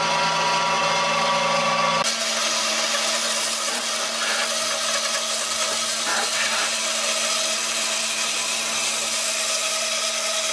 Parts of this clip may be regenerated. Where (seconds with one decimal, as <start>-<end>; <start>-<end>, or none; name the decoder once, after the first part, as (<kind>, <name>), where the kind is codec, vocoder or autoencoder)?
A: 6.1-6.6 (vocoder, WaveNeXt)